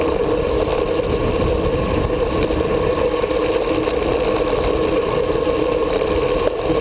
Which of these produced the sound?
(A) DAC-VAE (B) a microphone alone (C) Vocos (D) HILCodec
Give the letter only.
B